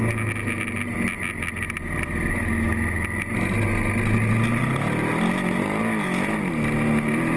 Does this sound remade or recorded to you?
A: recorded